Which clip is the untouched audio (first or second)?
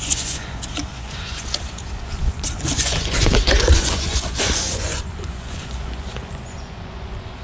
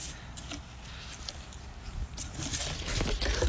second